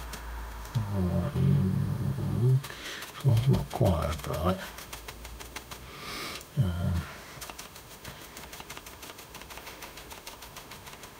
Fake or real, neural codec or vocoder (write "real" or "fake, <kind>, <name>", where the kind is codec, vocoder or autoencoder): fake, autoencoder, DAC-VAE